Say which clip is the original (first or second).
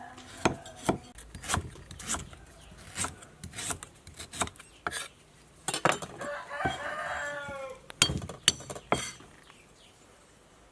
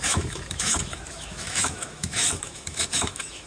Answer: first